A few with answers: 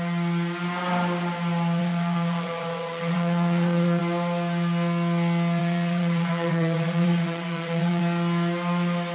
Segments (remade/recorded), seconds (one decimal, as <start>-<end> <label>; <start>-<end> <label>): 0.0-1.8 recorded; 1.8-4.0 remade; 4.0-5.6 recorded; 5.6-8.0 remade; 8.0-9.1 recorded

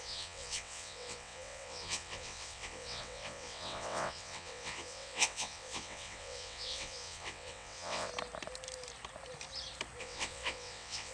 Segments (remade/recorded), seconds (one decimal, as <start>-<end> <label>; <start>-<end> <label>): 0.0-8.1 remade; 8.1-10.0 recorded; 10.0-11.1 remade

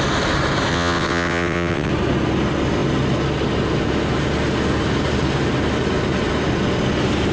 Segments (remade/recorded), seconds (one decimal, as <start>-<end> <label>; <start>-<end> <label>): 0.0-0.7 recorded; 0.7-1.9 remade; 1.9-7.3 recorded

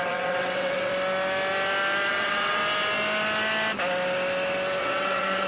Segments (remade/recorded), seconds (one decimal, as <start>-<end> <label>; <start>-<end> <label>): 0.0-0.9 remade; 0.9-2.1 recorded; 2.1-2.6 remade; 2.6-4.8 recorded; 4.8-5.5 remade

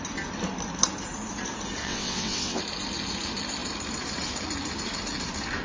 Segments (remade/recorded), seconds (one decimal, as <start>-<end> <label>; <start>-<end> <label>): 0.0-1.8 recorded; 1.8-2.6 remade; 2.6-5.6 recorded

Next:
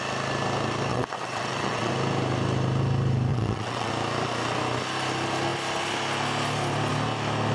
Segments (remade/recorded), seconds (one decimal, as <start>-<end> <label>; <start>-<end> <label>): 0.0-0.9 recorded; 0.9-1.9 remade; 1.9-3.3 recorded; 3.3-3.9 remade; 3.9-7.5 recorded